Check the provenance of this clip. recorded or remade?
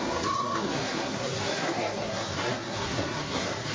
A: remade